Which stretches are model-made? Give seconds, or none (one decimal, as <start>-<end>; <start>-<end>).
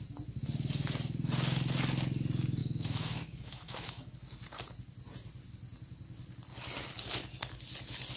2.6-4.1